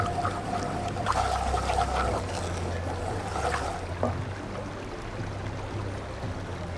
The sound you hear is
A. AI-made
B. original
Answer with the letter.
B